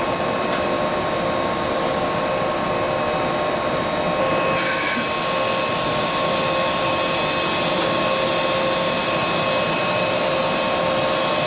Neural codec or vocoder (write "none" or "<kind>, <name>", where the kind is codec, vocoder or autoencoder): none